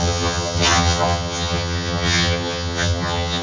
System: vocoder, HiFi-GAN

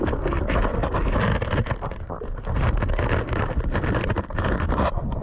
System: none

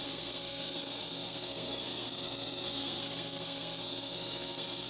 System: codec, SNAC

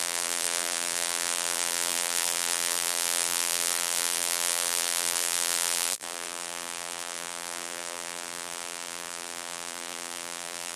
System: vocoder, BigVGAN v2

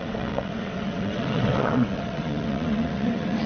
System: vocoder, WaveNeXt